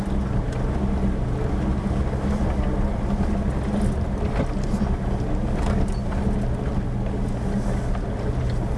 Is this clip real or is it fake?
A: real